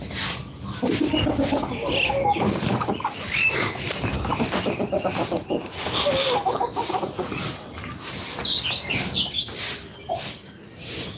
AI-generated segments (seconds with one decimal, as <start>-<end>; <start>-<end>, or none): 6.8-7.4